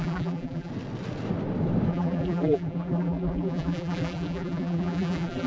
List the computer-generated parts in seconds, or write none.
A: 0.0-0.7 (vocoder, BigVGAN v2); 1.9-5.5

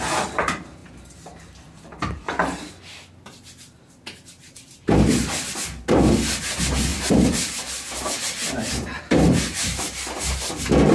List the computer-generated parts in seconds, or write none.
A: 0.8-2.7 (vocoder, BigVGAN v2); 6.9-9.0